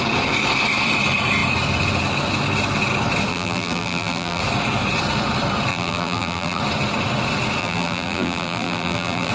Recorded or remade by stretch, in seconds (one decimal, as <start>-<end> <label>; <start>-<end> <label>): 0.0-3.3 recorded; 3.3-4.4 remade; 4.4-5.7 recorded; 5.7-6.6 remade; 6.6-7.6 recorded; 7.6-9.3 remade